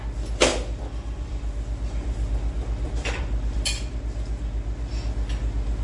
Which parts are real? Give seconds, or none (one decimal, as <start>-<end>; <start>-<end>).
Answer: 0.0-0.5; 4.0-5.8